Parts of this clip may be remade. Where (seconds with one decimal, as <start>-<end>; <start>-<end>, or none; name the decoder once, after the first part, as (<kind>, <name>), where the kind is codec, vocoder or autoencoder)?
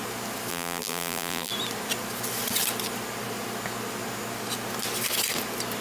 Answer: 0.5-1.5 (vocoder, BigVGAN v2)